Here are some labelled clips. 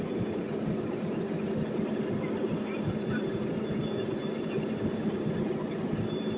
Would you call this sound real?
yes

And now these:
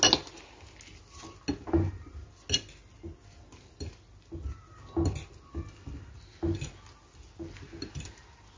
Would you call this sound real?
yes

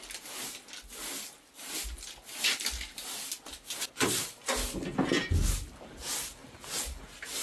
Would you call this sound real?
yes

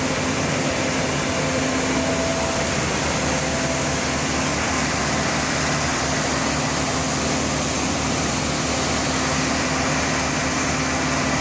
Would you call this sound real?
yes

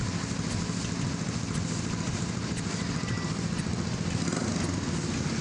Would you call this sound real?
yes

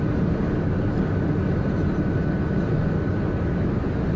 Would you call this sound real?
yes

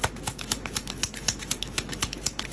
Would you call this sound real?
no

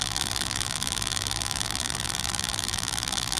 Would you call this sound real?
no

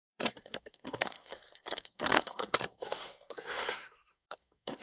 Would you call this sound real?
no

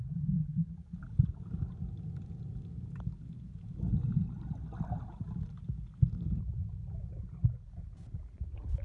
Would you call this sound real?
yes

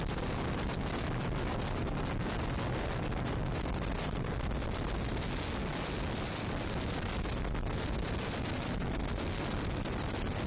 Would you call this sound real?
yes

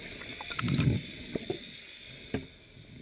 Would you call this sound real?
yes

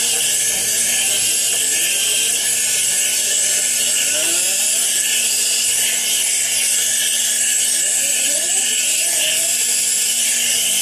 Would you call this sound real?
yes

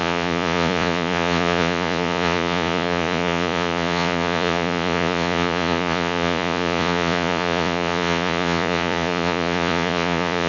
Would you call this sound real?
no